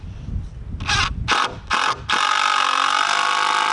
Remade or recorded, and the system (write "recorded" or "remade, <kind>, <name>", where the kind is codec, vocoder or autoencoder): recorded